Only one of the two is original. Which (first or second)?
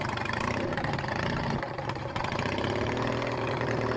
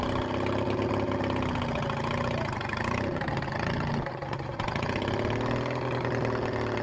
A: second